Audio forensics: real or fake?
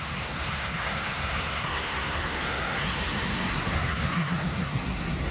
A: fake